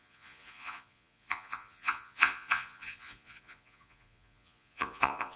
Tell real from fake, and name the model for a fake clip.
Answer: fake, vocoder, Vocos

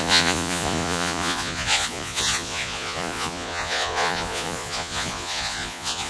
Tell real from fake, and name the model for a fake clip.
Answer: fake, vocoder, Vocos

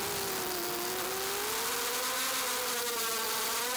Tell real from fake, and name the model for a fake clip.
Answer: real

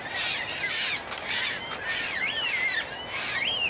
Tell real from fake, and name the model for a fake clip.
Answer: real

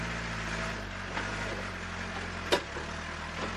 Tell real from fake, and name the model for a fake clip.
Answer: real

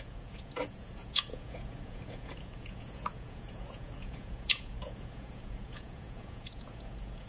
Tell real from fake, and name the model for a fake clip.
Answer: fake, vocoder, Vocos